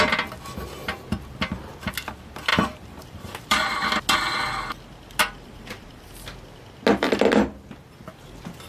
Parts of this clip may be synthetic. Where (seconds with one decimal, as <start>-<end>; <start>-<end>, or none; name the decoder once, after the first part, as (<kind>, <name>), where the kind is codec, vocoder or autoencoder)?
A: 2.5-4.0 (vocoder, BigVGAN v2); 5.2-6.0